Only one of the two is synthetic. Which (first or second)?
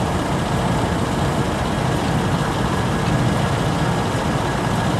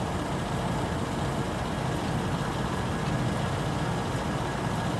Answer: first